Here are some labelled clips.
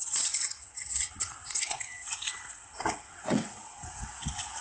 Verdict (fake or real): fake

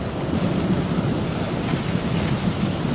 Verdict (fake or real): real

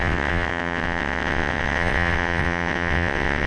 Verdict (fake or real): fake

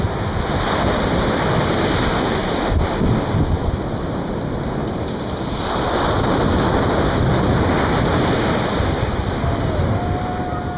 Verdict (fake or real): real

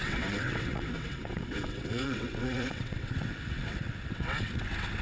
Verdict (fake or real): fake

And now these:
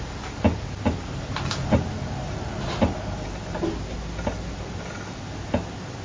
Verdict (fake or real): real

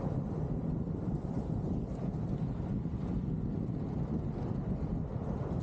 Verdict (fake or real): real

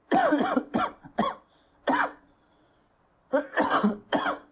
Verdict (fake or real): fake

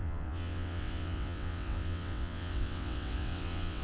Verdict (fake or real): fake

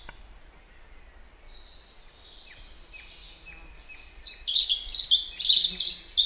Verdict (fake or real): real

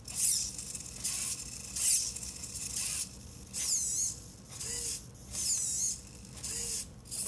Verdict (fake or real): real